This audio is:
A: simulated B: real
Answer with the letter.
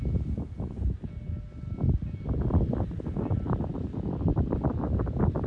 B